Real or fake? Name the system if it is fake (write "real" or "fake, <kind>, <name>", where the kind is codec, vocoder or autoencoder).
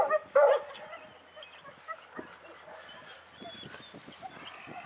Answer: real